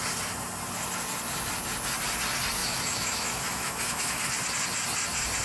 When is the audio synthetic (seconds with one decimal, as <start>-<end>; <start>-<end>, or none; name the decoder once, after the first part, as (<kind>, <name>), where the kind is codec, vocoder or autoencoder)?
2.6-4.2 (autoencoder, DAC-VAE)